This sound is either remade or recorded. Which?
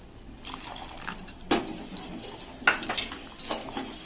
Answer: recorded